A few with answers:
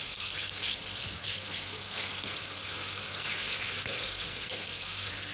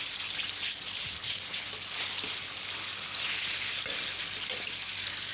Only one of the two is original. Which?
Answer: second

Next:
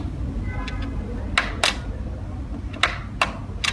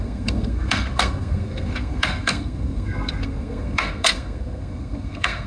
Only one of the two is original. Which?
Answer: first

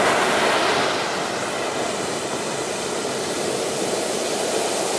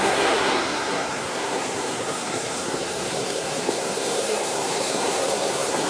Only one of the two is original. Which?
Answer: first